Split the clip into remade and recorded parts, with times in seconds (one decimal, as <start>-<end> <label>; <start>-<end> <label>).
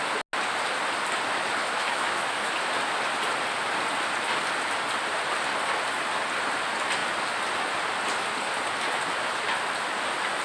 0.0-1.6 recorded; 1.6-2.5 remade; 2.5-10.4 recorded